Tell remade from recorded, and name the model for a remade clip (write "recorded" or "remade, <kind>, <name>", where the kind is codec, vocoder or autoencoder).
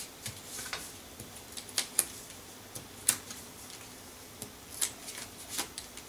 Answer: recorded